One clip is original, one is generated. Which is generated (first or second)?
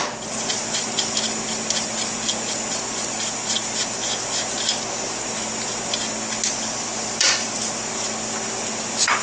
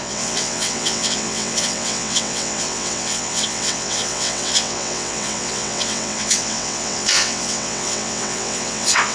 second